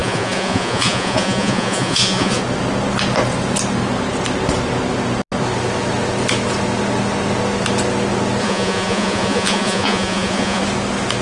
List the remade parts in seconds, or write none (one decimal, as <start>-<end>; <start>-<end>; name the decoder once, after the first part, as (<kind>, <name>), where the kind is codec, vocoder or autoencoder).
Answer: 0.0-2.4 (vocoder, Vocos); 8.4-10.6